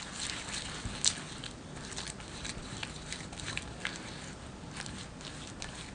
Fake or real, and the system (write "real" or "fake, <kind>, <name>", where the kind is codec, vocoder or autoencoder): real